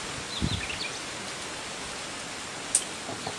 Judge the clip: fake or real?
real